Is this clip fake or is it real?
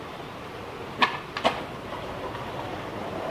fake